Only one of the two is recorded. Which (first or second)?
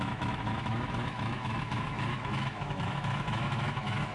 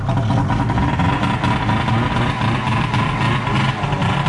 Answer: second